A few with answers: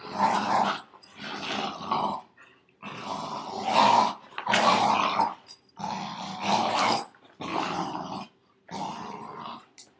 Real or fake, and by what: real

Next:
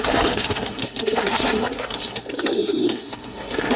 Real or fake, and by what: fake, codec, SNAC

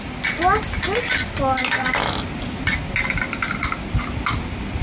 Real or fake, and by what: real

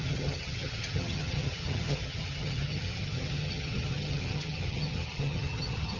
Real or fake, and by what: fake, vocoder, HiFi-GAN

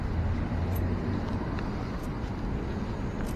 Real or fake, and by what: real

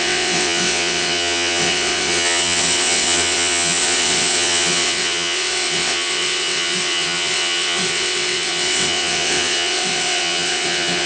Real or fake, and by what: fake, vocoder, WaveNeXt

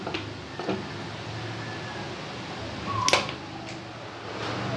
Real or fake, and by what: real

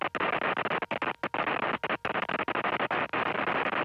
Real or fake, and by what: real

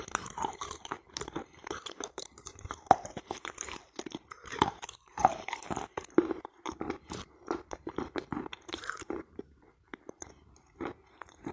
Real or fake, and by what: fake, vocoder, BigVGAN v2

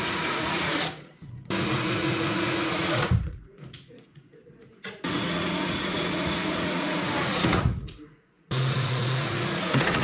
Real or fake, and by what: fake, vocoder, Vocos